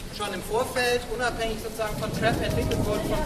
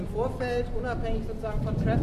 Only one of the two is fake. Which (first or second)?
first